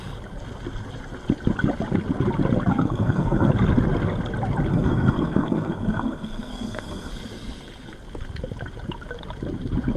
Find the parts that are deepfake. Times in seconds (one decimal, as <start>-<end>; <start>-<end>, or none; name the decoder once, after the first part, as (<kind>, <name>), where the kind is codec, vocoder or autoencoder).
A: 2.7-3.5 (codec, SNAC); 4.7-7.1